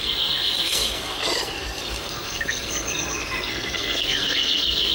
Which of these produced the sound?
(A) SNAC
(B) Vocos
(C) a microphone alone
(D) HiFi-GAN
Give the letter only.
A